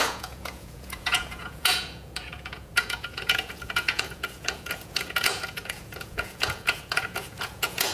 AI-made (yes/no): yes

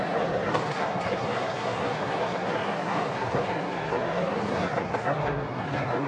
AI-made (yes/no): yes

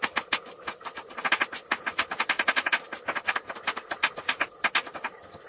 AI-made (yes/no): no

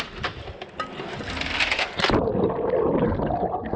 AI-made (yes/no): no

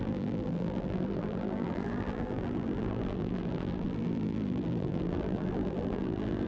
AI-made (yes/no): yes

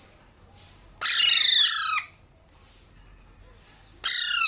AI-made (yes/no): no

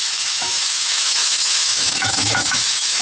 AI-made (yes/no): yes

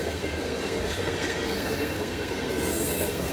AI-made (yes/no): yes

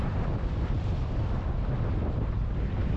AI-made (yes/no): yes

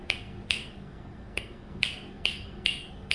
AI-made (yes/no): yes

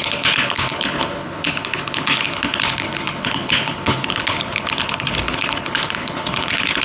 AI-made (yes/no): yes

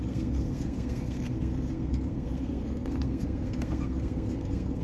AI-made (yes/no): yes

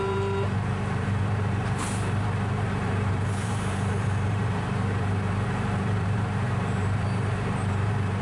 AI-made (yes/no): yes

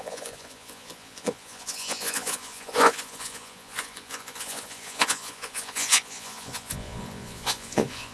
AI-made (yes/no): yes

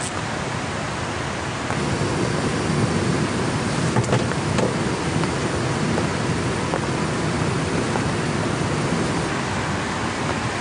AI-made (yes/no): no